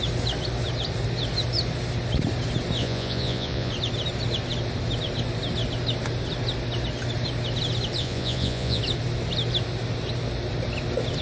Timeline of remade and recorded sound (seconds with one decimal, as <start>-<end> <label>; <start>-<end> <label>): 0.0-2.8 recorded; 2.8-3.7 remade; 3.7-8.0 recorded; 8.0-8.8 remade; 8.8-11.2 recorded